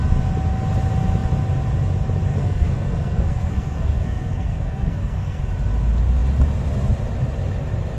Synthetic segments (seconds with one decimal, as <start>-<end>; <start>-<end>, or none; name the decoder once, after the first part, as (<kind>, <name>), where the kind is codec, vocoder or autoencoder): 2.3-5.4 (codec, SNAC)